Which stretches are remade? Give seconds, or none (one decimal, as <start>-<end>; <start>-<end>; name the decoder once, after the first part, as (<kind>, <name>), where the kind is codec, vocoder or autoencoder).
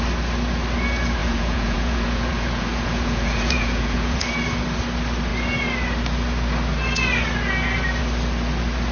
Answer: 1.2-4.2 (vocoder, Vocos)